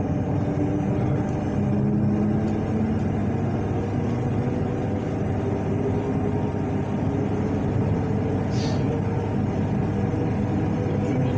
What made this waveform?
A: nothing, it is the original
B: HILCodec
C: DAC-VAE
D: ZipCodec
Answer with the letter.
A